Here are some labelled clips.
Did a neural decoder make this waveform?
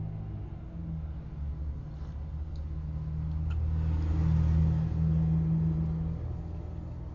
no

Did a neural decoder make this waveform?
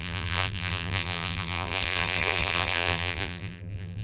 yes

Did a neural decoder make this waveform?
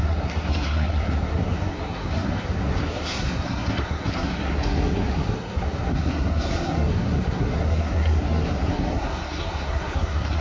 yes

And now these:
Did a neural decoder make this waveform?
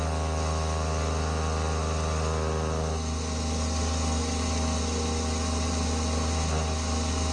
no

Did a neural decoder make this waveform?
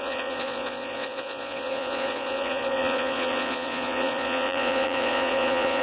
yes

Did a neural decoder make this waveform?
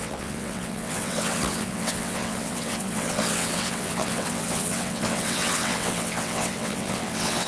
yes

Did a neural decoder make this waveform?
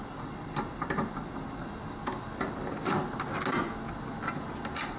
no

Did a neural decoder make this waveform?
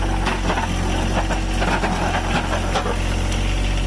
no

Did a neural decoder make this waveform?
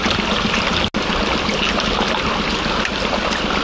no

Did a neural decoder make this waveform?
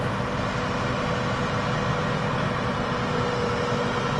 no